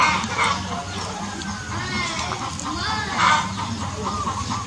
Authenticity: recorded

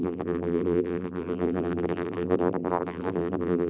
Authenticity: remade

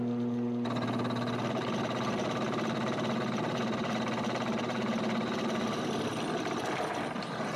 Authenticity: recorded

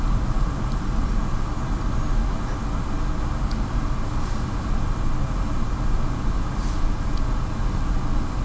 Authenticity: recorded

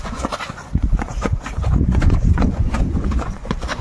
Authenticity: remade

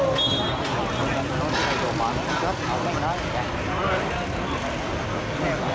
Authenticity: recorded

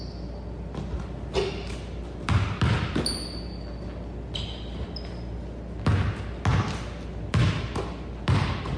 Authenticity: recorded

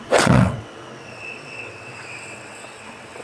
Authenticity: remade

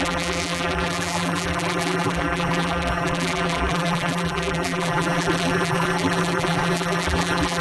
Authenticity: remade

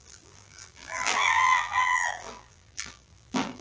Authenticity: remade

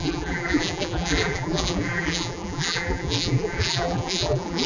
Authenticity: remade